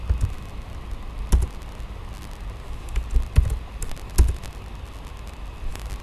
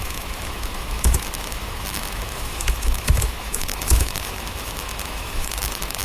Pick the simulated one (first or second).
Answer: second